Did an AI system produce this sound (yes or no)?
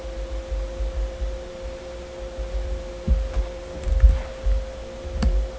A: no